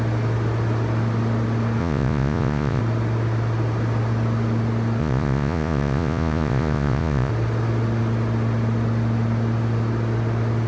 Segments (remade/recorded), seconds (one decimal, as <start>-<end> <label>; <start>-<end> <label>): 0.0-1.8 recorded; 1.8-2.8 remade; 2.8-5.0 recorded; 5.0-7.3 remade; 7.3-10.7 recorded